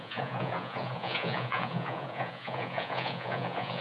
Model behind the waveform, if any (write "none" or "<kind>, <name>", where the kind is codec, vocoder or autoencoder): vocoder, Vocos